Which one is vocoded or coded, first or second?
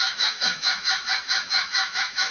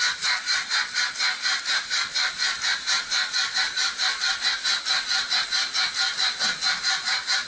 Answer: first